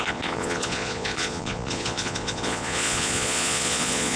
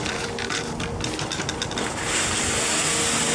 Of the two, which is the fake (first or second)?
first